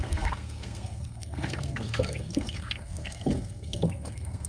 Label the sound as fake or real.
fake